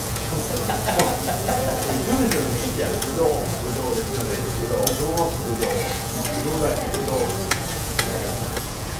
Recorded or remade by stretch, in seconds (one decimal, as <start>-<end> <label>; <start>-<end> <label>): 0.0-6.2 remade; 6.2-7.2 recorded; 7.2-9.0 remade